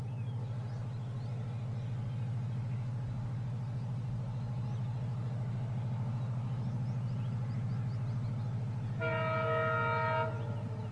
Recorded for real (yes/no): yes